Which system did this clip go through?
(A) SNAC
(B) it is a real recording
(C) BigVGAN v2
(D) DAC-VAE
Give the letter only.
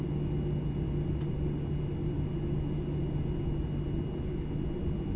B